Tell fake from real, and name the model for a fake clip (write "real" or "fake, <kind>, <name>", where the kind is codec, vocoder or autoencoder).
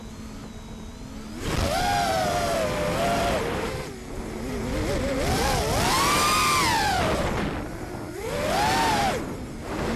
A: real